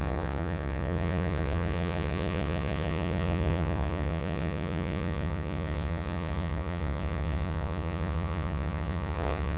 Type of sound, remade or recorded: remade